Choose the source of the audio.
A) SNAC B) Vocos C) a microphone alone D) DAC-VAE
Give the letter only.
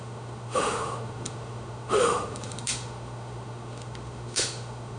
D